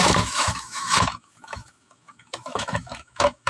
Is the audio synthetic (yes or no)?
yes